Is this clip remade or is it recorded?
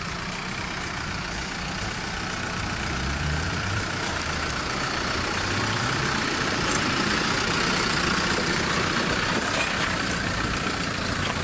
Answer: remade